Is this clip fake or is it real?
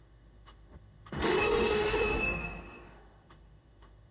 fake